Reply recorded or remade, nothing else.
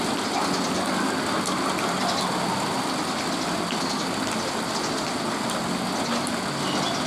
recorded